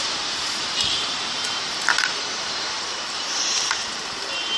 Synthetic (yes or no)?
yes